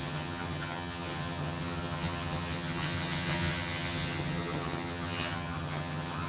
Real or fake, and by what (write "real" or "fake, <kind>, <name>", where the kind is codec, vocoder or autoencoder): fake, vocoder, HiFi-GAN